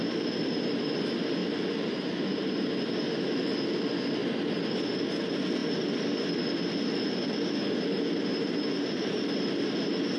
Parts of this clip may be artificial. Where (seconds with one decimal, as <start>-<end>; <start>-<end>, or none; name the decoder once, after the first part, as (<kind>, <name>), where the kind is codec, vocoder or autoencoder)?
1.4-2.7 (vocoder, BigVGAN v2); 8.3-9.3